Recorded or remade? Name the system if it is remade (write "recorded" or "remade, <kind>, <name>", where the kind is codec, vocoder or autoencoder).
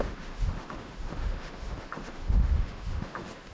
remade, autoencoder, DAC-VAE